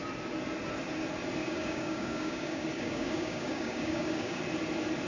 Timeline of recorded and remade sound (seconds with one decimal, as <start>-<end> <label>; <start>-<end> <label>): 0.0-1.4 recorded; 1.4-4.4 remade; 4.4-5.1 recorded